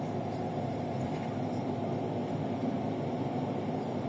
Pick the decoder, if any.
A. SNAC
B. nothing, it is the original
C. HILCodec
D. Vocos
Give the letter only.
B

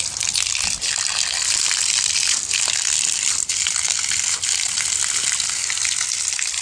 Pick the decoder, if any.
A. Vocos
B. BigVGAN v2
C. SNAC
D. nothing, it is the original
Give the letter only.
D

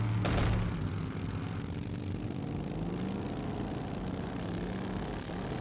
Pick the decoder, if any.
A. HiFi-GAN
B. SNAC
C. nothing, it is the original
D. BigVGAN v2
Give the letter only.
C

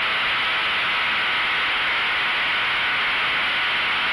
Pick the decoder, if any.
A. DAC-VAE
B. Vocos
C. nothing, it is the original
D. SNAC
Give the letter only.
C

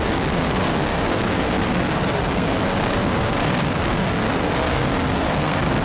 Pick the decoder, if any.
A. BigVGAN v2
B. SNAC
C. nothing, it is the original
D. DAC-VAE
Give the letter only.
B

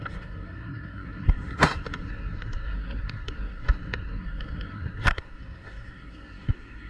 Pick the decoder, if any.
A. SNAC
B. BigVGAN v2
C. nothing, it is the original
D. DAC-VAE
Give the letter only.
A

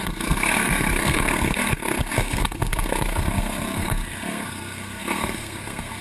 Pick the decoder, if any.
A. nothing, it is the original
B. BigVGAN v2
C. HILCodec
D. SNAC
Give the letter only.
D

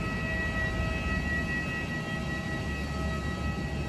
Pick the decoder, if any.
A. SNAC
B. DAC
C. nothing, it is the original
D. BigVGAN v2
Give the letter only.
C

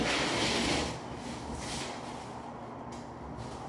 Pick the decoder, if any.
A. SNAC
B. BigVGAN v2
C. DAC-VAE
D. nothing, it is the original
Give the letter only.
D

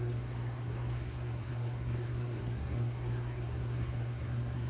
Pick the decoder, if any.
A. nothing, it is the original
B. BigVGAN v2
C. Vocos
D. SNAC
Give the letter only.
D